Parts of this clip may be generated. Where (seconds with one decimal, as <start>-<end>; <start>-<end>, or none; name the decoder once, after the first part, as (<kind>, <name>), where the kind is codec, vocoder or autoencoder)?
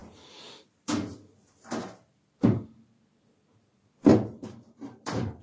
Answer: 0.0-1.4 (vocoder, BigVGAN v2); 4.1-5.4